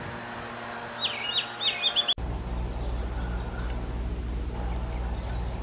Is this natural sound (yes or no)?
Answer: yes